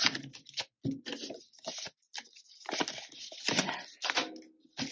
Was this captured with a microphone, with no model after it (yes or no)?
yes